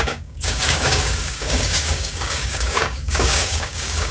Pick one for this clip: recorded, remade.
remade